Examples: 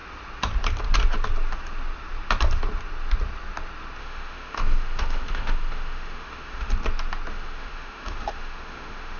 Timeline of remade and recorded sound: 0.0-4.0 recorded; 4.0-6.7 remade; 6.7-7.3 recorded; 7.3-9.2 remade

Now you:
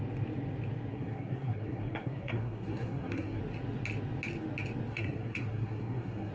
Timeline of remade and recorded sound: 0.0-0.9 recorded; 0.9-3.4 remade; 3.4-4.9 recorded; 4.9-6.3 remade

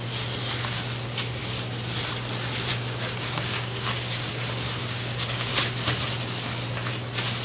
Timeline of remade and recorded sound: 0.0-2.7 recorded; 2.7-4.3 remade; 4.3-4.8 recorded; 4.8-5.5 remade; 5.5-7.4 recorded

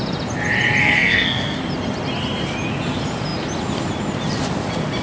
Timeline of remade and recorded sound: 0.0-0.8 recorded; 0.8-1.6 remade; 1.6-5.0 recorded